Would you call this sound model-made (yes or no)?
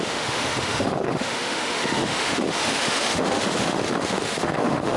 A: yes